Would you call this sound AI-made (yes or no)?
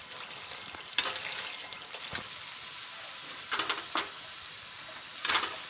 no